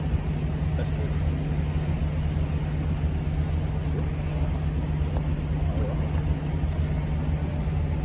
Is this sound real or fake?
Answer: real